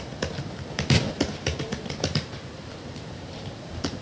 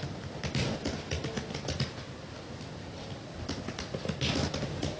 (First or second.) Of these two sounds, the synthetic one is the first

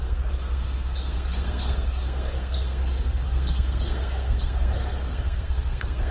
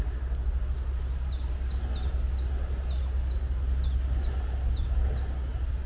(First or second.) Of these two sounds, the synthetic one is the first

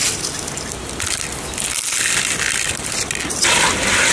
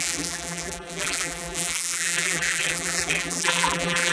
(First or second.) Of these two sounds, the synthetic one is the second